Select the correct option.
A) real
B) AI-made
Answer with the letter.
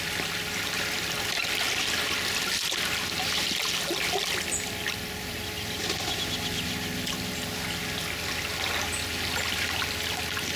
A